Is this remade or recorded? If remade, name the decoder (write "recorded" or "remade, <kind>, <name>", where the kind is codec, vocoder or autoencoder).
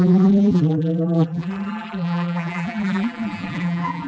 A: remade, vocoder, BigVGAN v2